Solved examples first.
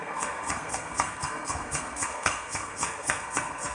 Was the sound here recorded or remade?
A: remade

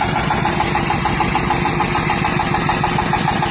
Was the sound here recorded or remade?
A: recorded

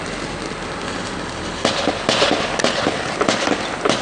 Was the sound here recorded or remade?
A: recorded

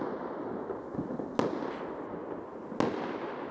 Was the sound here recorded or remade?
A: recorded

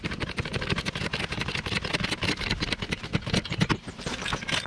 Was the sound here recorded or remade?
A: recorded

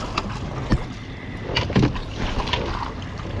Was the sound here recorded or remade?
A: recorded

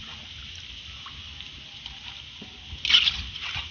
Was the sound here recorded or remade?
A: recorded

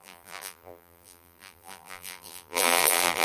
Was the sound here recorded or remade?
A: remade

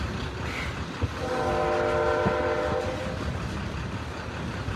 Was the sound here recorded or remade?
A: recorded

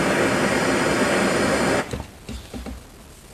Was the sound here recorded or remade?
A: recorded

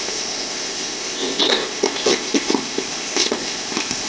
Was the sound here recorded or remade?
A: remade